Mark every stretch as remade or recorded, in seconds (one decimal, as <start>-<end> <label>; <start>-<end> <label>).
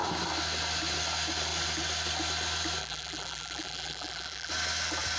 0.0-2.8 recorded; 2.8-4.5 remade; 4.5-5.2 recorded